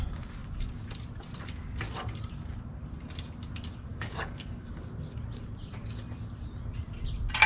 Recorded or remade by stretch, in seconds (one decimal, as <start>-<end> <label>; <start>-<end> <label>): 0.0-3.9 recorded; 3.9-4.7 remade; 4.7-7.5 recorded